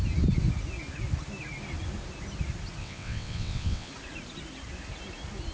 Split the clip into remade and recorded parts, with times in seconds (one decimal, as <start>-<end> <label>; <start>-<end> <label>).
0.0-2.8 recorded; 2.8-3.9 remade; 3.9-5.5 recorded